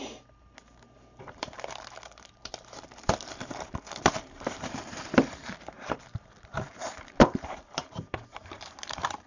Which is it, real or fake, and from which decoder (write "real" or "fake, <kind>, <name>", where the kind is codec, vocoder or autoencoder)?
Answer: fake, vocoder, BigVGAN v2